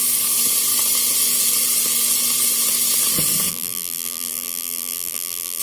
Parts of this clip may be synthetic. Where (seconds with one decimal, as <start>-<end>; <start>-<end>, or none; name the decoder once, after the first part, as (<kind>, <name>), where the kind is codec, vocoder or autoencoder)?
3.5-5.6 (vocoder, BigVGAN v2)